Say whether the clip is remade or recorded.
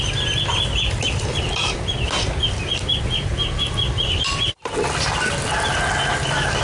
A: recorded